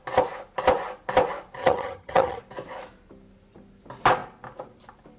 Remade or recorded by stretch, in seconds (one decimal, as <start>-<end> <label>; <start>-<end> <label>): 0.0-1.6 recorded; 1.6-2.4 remade; 2.4-5.2 recorded